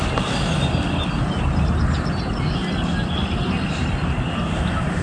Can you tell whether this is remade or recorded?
remade